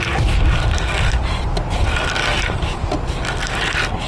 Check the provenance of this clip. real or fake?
real